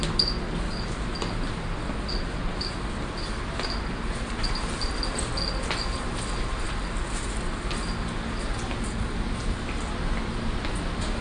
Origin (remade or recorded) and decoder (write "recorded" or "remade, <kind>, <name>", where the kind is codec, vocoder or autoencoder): recorded